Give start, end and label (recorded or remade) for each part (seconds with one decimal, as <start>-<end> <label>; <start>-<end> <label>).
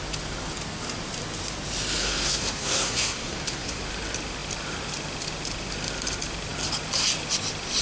0.0-2.0 recorded; 2.0-3.8 remade; 3.8-7.8 recorded